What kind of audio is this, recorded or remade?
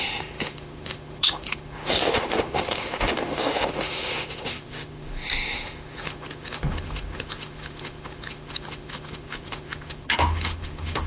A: remade